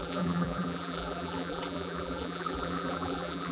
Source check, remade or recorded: remade